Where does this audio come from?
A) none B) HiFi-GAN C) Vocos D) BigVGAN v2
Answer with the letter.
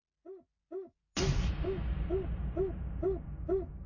A